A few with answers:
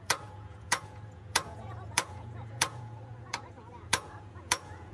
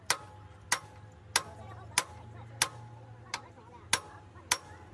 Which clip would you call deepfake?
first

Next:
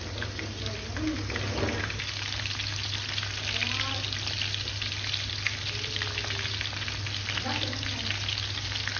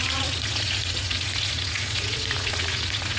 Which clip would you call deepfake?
second